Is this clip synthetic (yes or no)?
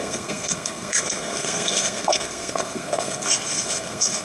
yes